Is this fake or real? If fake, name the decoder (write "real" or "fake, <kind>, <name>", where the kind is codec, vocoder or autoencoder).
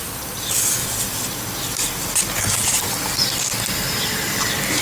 real